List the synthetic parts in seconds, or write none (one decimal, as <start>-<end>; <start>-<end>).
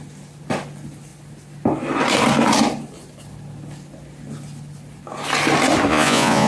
5.9-6.5